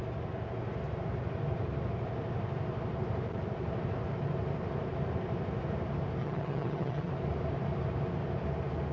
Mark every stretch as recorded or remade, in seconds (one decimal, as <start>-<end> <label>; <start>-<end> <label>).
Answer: 0.0-6.2 recorded; 6.2-7.1 remade; 7.1-8.9 recorded